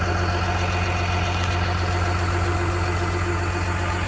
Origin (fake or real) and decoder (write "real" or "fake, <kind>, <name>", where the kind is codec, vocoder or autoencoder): real